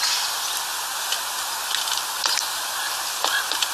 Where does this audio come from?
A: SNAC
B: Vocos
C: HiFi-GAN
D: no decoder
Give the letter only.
D